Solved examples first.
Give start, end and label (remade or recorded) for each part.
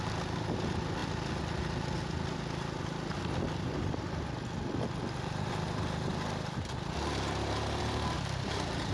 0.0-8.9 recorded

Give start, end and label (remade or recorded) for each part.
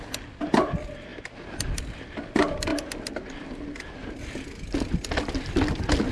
0.0-6.1 recorded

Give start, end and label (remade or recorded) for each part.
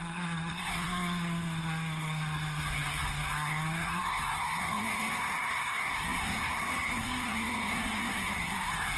0.0-9.0 remade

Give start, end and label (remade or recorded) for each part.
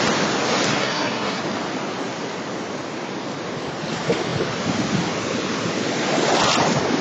0.0-0.7 recorded; 0.7-1.4 remade; 1.4-7.0 recorded